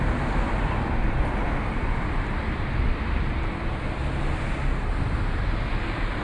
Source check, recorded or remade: recorded